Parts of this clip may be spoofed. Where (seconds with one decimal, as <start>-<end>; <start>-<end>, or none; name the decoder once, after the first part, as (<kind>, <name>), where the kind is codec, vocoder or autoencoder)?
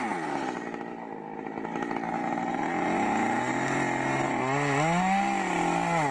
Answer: none